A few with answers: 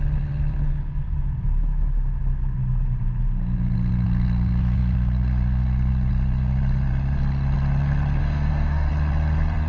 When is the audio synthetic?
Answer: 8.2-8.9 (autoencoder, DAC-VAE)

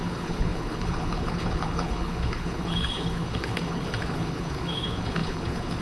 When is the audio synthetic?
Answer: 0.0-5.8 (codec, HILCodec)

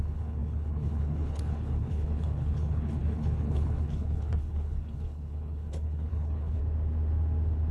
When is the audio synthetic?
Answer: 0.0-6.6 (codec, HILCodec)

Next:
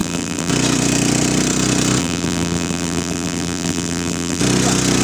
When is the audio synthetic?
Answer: 0.0-0.5 (vocoder, BigVGAN v2); 2.0-4.4

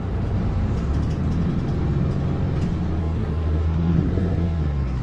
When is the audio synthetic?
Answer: 3.0-5.0 (codec, SNAC)

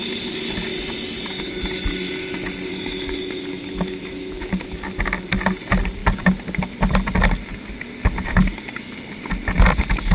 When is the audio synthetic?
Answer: 2.7-4.5 (autoencoder, DAC-VAE)